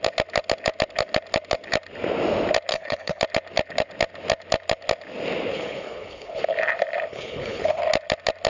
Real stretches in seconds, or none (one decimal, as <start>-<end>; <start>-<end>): 0.0-2.7; 3.2-5.5; 6.4-7.1; 7.8-8.5